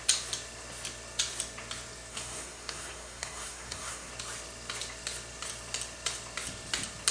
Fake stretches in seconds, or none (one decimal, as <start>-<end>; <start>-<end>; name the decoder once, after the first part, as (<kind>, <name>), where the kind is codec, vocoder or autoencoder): 2.1-4.1 (codec, SNAC)

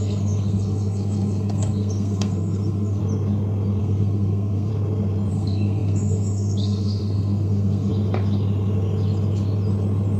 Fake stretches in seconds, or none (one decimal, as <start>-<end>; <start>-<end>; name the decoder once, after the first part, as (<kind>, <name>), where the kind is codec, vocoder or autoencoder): 0.0-3.0 (codec, SNAC); 3.8-4.7; 5.3-7.9

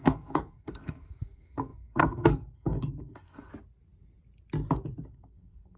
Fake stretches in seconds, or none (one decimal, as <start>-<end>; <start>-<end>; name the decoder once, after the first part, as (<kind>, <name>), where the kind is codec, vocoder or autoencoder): 0.0-3.5 (codec, SNAC); 5.1-5.8

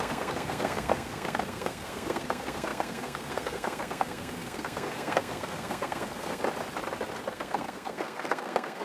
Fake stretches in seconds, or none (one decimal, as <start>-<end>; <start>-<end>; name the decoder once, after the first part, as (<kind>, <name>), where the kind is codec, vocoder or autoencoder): 0.0-6.4 (codec, SNAC); 7.3-8.8

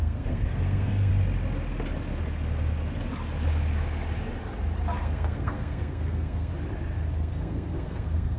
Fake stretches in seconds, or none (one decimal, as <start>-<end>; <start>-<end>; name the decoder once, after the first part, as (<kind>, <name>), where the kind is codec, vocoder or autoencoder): 0.0-1.1 (codec, SNAC); 5.0-6.5; 7.1-8.4

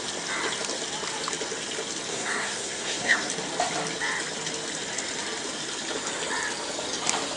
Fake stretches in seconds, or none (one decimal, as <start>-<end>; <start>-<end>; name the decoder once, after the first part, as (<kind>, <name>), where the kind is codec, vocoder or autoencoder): 2.1-3.3 (codec, SNAC)

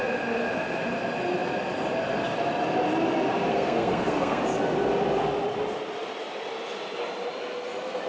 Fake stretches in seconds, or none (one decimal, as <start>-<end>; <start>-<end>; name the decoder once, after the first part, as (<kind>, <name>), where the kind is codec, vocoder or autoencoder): 3.5-4.4 (codec, SNAC)

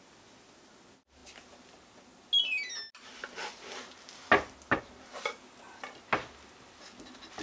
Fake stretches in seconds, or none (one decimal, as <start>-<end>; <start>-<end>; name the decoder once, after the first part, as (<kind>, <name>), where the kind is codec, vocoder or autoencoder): none